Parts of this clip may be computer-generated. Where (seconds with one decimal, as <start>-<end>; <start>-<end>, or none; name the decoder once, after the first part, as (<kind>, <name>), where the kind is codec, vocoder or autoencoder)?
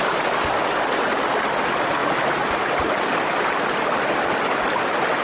none